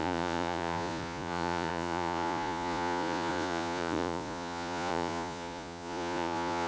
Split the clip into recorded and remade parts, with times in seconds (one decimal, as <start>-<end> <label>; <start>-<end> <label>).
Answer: 0.0-6.7 remade